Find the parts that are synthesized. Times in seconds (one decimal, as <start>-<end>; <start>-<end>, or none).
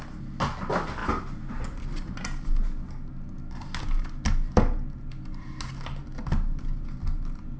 none